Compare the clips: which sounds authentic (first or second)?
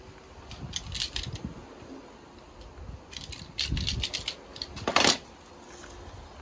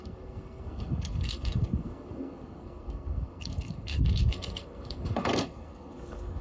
first